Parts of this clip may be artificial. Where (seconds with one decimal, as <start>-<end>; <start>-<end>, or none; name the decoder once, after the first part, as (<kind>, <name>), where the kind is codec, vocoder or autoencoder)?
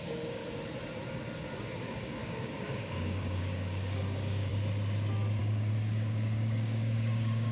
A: 0.0-0.4 (codec, DAC); 1.6-4.5; 5.4-7.5